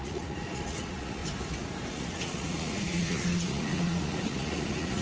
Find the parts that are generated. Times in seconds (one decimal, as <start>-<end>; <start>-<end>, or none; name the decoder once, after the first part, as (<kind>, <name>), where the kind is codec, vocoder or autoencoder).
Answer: 0.0-1.2 (vocoder, Vocos); 1.9-5.0